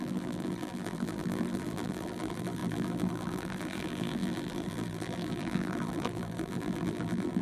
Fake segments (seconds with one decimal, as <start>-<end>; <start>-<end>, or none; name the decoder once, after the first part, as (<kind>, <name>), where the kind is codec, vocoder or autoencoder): 0.0-7.4 (vocoder, BigVGAN v2)